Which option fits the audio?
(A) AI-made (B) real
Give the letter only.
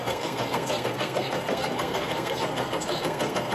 A